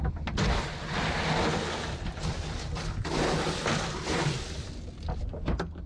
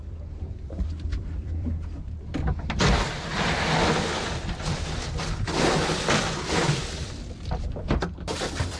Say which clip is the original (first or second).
first